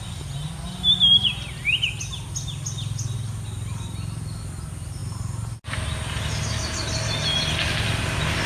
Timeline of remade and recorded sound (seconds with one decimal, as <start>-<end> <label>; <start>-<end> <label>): 0.0-8.5 recorded